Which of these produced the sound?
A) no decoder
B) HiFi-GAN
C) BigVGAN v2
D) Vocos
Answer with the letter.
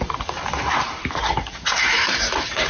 C